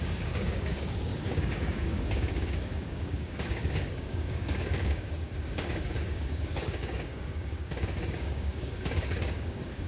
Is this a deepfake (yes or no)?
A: yes